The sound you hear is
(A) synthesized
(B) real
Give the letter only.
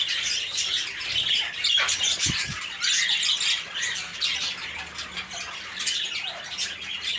B